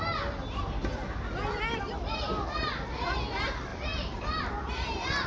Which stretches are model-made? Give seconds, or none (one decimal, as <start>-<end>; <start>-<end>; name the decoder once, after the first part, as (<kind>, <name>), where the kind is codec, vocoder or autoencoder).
none